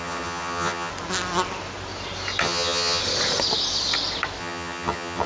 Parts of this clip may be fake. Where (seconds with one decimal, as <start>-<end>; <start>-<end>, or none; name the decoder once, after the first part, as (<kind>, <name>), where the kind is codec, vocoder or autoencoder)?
0.0-0.9 (vocoder, HiFi-GAN); 2.4-3.0; 4.4-5.3